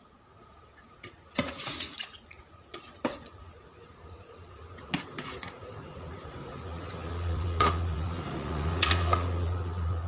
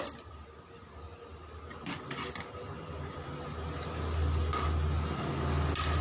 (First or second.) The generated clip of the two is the first